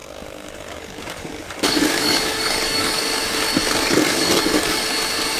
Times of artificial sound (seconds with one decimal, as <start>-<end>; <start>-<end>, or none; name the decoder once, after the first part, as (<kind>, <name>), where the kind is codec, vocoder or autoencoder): 0.0-3.2 (codec, DAC); 3.6-4.8